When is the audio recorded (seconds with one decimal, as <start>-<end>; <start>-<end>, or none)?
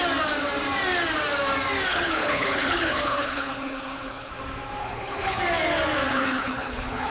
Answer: 0.0-1.9; 4.3-4.8; 5.4-6.1